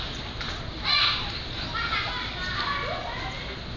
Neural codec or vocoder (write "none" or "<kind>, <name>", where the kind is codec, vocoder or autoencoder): none